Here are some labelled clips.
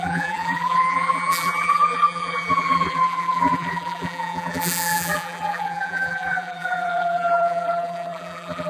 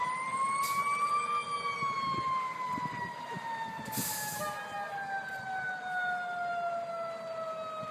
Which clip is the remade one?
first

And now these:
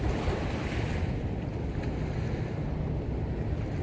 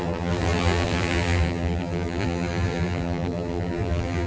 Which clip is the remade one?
second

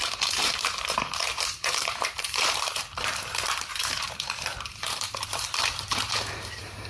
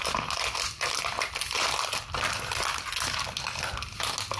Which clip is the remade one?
first